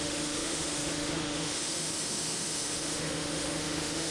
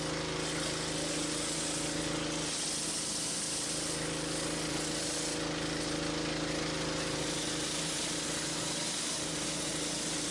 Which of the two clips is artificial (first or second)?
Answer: first